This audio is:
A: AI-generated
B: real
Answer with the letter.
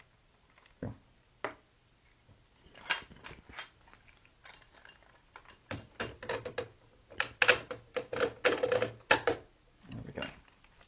B